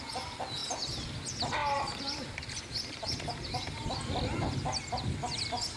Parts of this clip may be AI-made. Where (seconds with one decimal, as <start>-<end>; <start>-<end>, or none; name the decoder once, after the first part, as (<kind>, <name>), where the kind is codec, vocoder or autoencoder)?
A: 0.6-1.2 (vocoder, BigVGAN v2); 1.6-4.5